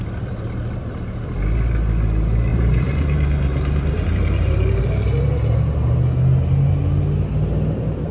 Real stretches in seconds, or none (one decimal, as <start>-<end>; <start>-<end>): 0.0-2.5; 4.8-8.1